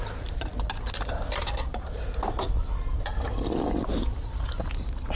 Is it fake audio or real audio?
real